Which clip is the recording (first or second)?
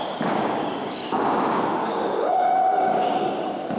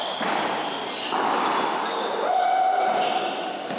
second